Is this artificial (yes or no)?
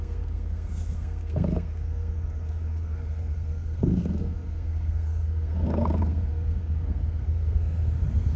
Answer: yes